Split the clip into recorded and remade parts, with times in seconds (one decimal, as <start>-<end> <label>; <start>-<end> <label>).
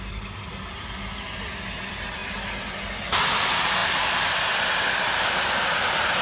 0.0-6.2 recorded